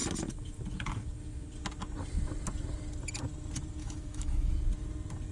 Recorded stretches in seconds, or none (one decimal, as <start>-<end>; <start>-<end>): 0.0-3.8; 4.5-5.3